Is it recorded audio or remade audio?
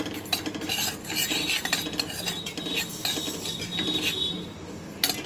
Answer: recorded